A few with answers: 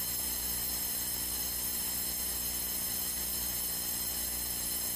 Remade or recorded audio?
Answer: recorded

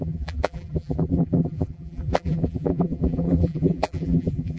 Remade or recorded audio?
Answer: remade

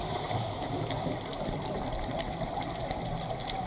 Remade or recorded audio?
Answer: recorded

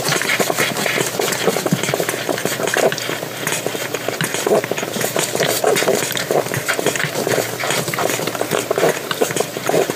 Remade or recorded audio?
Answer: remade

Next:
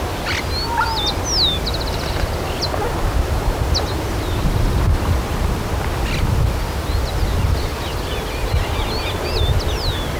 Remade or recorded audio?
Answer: recorded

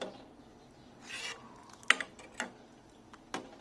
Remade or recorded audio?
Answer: recorded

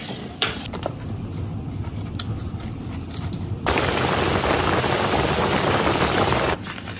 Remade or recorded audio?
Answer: remade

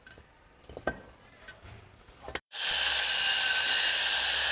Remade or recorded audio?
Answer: remade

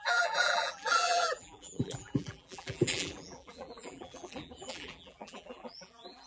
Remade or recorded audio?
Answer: remade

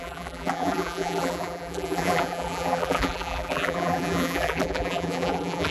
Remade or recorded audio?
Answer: remade